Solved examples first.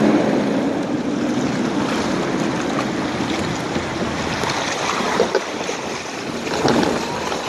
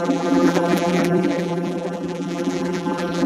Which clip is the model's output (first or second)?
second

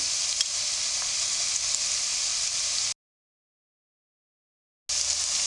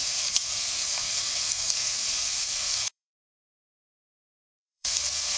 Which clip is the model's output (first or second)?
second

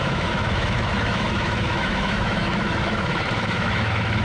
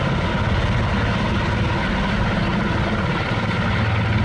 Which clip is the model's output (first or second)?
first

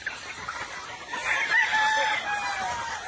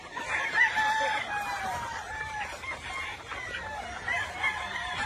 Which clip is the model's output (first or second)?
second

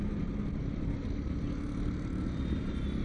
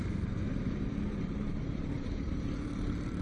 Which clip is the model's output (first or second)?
second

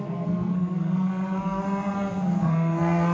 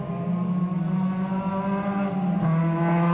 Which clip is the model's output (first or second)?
first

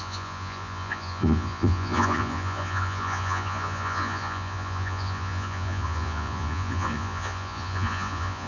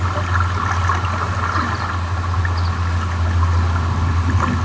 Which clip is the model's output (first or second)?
first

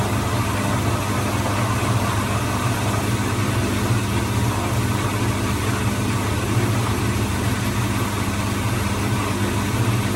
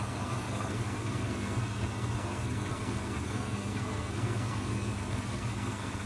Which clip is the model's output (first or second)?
second